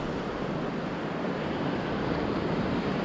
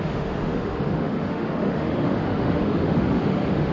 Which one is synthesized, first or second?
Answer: second